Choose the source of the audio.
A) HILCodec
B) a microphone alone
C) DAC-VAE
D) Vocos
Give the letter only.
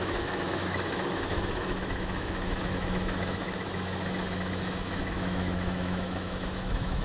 C